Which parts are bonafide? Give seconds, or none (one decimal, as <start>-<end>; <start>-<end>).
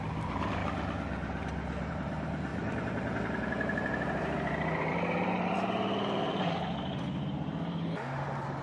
0.6-1.9